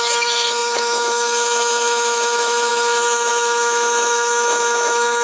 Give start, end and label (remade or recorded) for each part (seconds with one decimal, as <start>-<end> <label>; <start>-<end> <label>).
0.0-5.2 remade